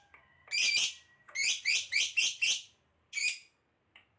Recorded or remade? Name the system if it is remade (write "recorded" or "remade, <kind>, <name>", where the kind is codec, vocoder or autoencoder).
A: recorded